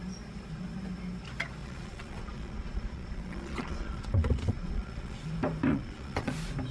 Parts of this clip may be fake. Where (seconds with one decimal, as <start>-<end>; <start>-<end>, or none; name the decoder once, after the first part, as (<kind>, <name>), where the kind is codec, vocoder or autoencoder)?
1.6-5.3 (vocoder, Vocos); 5.7-6.3